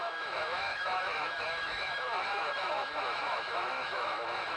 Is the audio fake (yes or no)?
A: yes